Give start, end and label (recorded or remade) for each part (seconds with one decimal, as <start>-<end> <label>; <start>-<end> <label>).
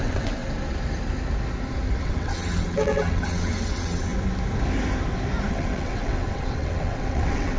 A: 0.0-0.4 remade; 0.4-2.0 recorded; 2.0-4.1 remade; 4.1-5.5 recorded; 5.5-7.6 remade